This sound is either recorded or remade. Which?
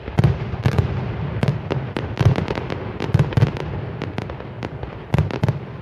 recorded